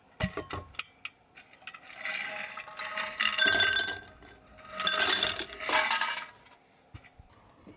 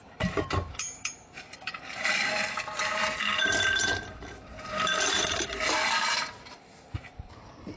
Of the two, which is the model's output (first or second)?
second